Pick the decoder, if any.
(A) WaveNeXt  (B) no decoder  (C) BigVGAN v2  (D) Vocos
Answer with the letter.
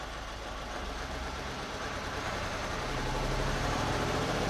C